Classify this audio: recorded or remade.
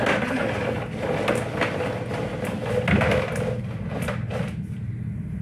recorded